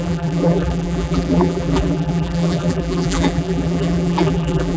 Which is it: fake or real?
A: fake